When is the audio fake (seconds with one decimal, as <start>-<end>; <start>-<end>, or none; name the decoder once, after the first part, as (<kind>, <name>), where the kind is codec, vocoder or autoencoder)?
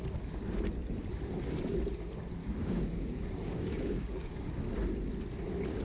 2.4-4.5 (codec, DAC)